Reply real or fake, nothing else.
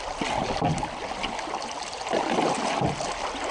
real